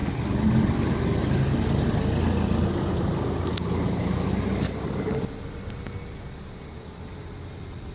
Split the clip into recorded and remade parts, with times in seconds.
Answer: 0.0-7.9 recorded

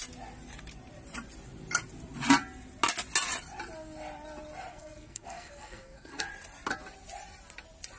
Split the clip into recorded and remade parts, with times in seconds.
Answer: 0.0-4.7 recorded; 4.7-6.2 remade; 6.2-8.0 recorded

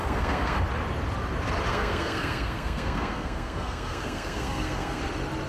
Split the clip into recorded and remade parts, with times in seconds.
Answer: 0.0-0.6 remade; 0.6-1.7 recorded; 1.7-5.0 remade; 5.0-5.5 recorded

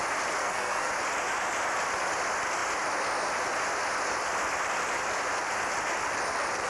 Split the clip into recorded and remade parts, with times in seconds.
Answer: 0.0-0.4 recorded; 0.4-0.9 remade; 0.9-6.7 recorded

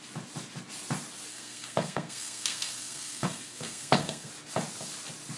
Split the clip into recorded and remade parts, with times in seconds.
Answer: 0.0-1.3 recorded; 1.3-4.3 remade; 4.3-5.4 recorded

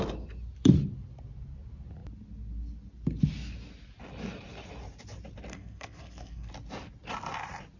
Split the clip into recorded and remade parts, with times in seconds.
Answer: 0.0-5.5 recorded; 5.5-6.5 remade; 6.5-7.8 recorded

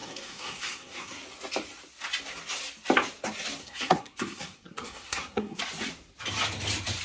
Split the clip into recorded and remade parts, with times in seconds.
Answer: 0.0-1.2 remade; 1.2-3.6 recorded; 3.6-5.6 remade; 5.6-7.0 recorded

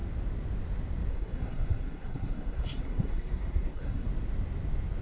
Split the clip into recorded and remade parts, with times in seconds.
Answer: 0.0-1.1 recorded; 1.1-4.1 remade; 4.1-5.0 recorded